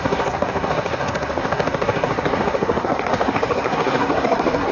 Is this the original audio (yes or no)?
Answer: no